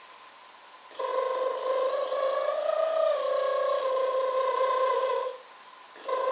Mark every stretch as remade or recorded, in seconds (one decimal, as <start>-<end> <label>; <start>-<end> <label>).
0.0-6.3 recorded